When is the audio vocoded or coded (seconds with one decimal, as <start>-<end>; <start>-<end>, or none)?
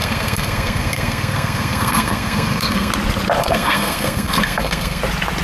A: 0.0-2.9; 3.4-5.0